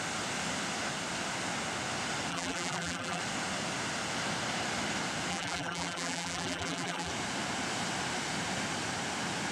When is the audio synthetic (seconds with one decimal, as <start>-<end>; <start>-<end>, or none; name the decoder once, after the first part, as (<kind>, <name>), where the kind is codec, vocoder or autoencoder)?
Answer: 2.3-3.2 (vocoder, BigVGAN v2); 5.3-7.1